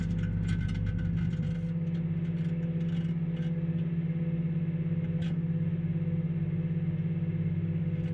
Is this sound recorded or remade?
recorded